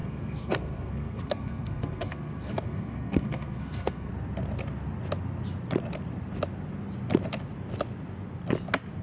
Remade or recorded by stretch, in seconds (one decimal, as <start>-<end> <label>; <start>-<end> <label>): 0.0-4.1 remade; 4.1-9.0 recorded

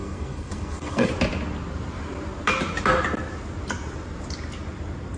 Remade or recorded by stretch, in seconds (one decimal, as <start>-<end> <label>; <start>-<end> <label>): 0.0-1.1 remade; 1.1-5.2 recorded

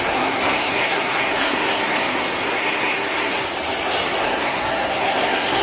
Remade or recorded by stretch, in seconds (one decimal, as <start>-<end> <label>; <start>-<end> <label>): 0.0-3.5 remade; 3.5-4.2 recorded; 4.2-5.6 remade

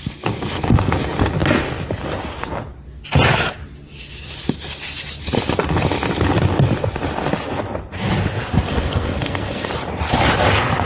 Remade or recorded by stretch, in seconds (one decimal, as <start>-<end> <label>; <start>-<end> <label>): 0.0-8.7 recorded; 8.7-9.7 remade; 9.7-10.9 recorded

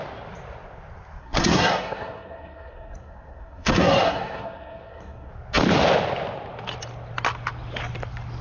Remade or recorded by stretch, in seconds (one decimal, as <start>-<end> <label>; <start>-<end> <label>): 0.0-1.2 recorded; 1.2-5.3 remade; 5.3-8.4 recorded